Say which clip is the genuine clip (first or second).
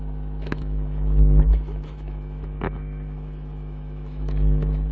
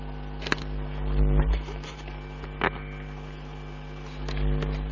second